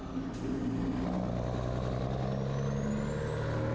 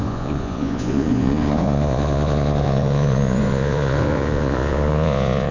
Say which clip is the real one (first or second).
first